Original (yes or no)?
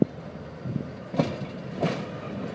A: yes